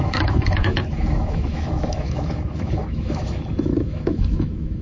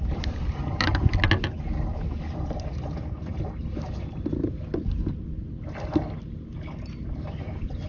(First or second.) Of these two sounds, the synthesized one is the first